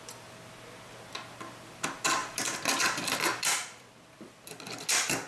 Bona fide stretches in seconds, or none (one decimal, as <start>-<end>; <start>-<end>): 0.0-2.2; 3.9-5.3